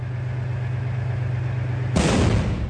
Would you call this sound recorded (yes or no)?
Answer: yes